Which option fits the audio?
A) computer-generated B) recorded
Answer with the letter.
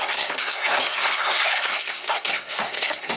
A